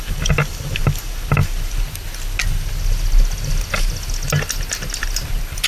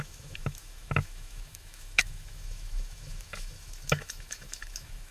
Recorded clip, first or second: first